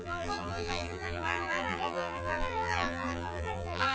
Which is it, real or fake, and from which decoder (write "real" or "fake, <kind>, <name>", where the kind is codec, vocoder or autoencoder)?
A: fake, vocoder, BigVGAN v2